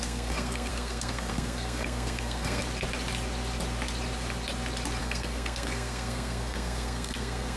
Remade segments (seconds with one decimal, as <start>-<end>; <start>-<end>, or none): 0.0-2.6; 5.0-7.6